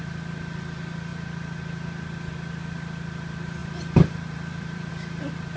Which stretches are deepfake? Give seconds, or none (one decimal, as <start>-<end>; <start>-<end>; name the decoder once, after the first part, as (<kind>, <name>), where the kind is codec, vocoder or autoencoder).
3.6-4.9 (vocoder, BigVGAN v2)